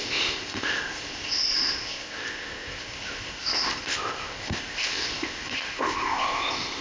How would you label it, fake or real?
fake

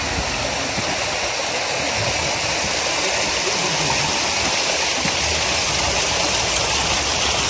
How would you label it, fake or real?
real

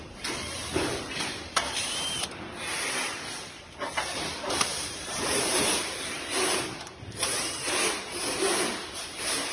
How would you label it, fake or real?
fake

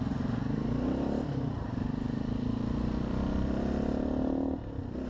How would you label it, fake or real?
real